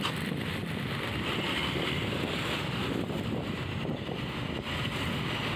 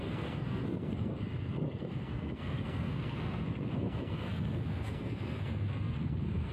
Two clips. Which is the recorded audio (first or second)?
first